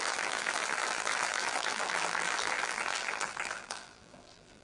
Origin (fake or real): fake